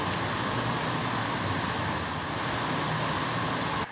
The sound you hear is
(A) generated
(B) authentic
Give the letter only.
B